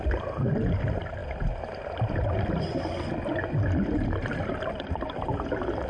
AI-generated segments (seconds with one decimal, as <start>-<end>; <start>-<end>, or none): none

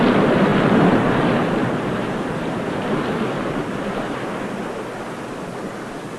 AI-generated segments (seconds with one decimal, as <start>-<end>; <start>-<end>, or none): 0.5-1.2; 1.6-4.2

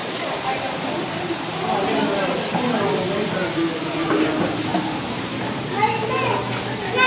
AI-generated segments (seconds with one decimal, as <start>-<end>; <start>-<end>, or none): 0.0-1.4; 4.7-5.6

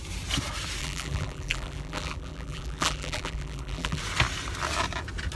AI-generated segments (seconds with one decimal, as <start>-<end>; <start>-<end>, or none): 0.8-4.0

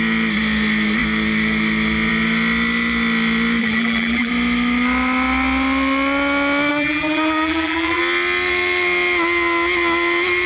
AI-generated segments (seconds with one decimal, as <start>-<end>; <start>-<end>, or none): 3.6-4.3; 6.7-8.0

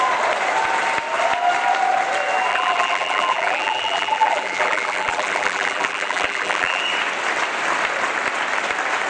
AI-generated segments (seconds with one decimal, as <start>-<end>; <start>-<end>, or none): 2.5-6.8